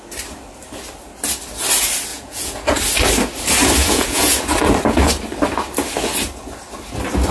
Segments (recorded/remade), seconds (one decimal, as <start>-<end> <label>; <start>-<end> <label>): 0.0-2.1 recorded; 2.1-2.8 remade; 2.8-3.8 recorded; 3.8-4.4 remade; 4.4-7.3 recorded